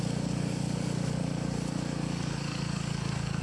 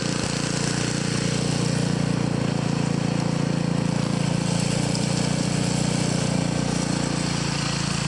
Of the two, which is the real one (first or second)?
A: second